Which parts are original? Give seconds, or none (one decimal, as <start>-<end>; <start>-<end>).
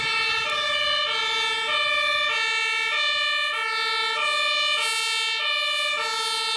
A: 0.0-6.6